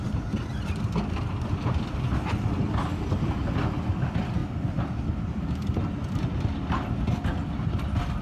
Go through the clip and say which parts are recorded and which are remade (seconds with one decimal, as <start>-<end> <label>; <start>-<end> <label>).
0.0-8.2 recorded